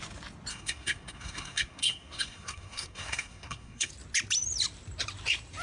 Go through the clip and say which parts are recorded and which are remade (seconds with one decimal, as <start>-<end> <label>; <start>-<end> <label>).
0.0-0.5 recorded; 0.5-3.9 remade; 3.9-5.6 recorded